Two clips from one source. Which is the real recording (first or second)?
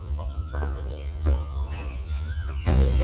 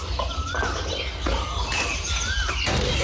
second